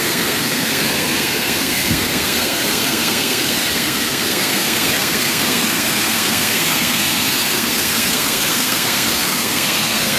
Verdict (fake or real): fake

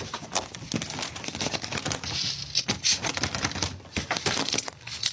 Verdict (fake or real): real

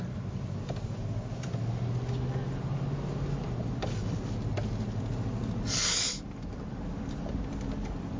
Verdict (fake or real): real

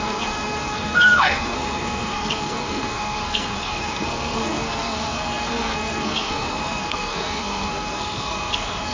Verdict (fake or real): fake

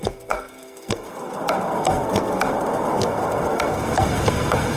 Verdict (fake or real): fake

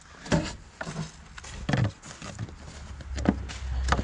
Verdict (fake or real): real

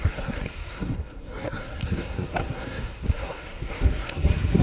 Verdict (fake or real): fake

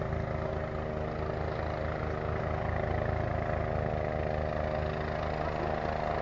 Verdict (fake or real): real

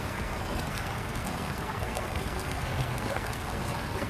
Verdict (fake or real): fake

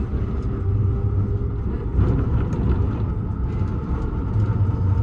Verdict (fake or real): real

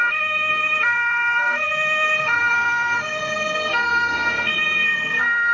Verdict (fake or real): fake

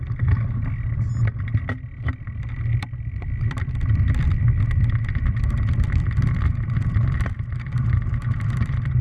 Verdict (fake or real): real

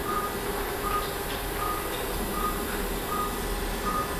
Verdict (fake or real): real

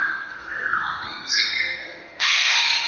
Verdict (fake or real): fake